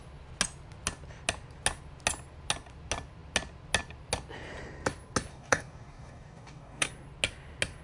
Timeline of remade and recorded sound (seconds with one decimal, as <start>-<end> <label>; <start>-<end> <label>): 0.0-5.3 recorded; 5.3-6.9 remade; 6.9-7.8 recorded